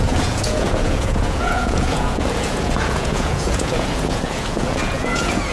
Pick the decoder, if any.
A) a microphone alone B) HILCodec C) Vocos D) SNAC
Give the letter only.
C